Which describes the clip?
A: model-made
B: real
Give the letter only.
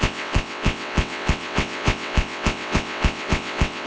A